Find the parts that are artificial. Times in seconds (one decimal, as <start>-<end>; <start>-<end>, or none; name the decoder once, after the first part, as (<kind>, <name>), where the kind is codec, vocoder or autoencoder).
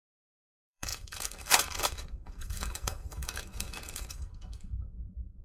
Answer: 0.0-5.4 (codec, SNAC)